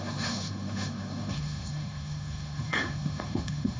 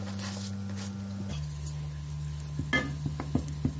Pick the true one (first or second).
second